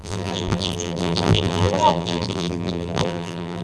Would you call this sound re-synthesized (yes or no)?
yes